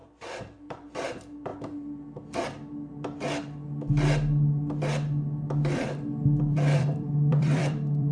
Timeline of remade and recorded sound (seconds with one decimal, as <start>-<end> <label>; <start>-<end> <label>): 0.0-0.7 recorded; 0.7-1.5 remade; 1.5-6.4 recorded; 6.4-8.1 remade

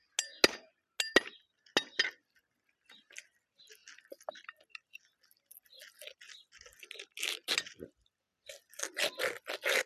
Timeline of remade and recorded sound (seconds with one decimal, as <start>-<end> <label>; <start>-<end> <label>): 0.0-9.9 recorded

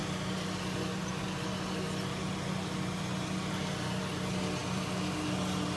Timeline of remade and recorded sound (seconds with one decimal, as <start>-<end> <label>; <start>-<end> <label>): 0.0-5.8 recorded

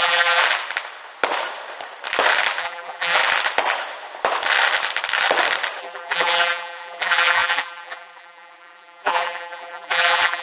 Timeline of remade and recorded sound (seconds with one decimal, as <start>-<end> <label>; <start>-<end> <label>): 0.0-0.4 remade; 0.4-2.6 recorded; 2.6-3.2 remade; 3.2-5.8 recorded; 5.8-10.4 remade

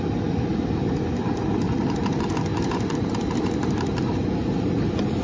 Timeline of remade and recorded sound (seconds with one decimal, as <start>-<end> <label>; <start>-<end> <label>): 0.0-2.5 recorded; 2.5-5.2 remade

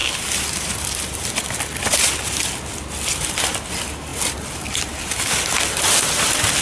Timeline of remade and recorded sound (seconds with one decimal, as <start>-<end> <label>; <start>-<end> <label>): 0.0-1.3 remade; 1.3-6.6 recorded